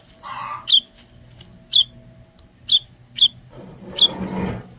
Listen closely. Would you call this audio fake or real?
real